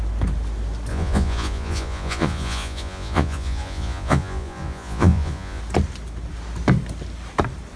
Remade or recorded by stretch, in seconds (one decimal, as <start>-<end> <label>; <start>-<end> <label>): 0.0-0.9 recorded; 0.9-5.6 remade; 5.6-7.8 recorded